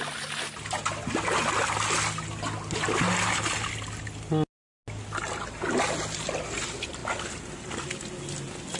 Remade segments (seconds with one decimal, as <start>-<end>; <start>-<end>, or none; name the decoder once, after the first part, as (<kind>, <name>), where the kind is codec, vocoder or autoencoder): none